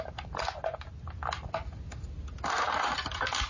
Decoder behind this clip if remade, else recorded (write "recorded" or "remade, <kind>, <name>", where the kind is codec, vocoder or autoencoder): recorded